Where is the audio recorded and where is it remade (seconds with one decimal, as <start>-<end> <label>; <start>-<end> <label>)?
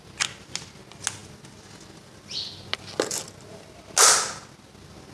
0.0-5.1 recorded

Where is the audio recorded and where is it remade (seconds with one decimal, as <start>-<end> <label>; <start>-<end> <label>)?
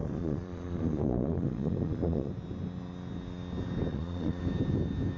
0.0-2.3 remade; 2.3-3.9 recorded; 3.9-4.4 remade; 4.4-5.2 recorded